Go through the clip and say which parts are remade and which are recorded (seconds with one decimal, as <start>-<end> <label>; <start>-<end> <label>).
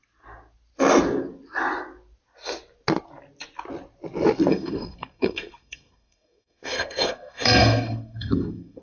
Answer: 0.0-4.5 recorded; 4.5-8.8 remade